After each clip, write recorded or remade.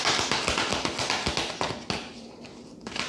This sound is recorded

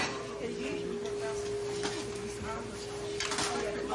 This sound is recorded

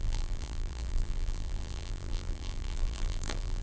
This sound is remade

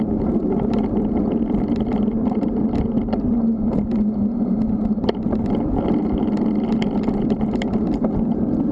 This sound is recorded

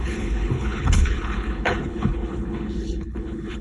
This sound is remade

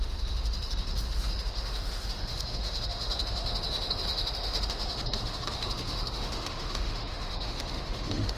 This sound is remade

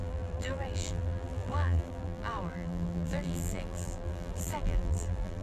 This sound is remade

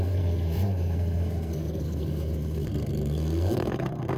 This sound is remade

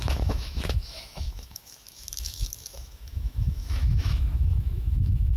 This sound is remade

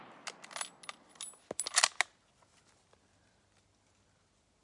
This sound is recorded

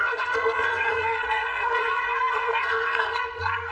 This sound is remade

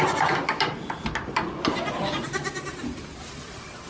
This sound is recorded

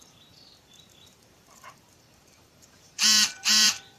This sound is remade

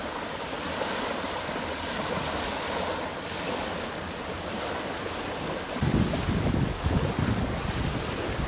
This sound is recorded